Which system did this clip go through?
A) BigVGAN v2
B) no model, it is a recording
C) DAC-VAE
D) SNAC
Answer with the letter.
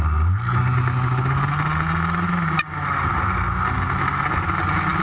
B